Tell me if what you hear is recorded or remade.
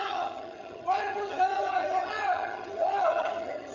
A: remade